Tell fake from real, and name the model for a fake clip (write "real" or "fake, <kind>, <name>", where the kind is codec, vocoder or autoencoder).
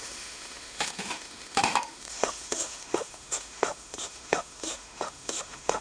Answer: fake, autoencoder, DAC-VAE